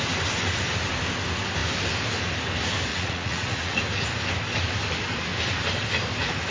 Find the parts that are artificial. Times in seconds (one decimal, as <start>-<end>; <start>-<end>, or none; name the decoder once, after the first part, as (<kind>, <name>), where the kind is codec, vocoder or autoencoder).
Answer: 2.9-3.8 (vocoder, Vocos)